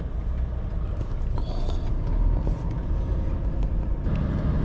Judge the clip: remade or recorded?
recorded